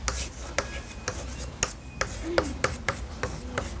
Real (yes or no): yes